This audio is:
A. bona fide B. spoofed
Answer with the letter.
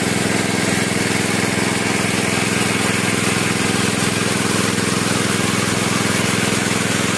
A